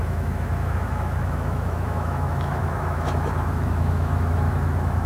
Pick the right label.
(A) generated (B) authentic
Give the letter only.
A